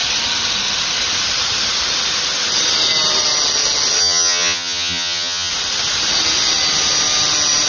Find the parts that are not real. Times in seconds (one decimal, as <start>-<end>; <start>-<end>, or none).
4.0-5.5